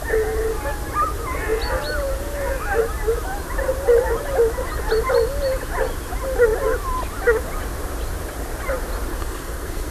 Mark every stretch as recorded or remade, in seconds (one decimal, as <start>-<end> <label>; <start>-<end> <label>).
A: 0.0-9.1 recorded; 9.1-9.9 remade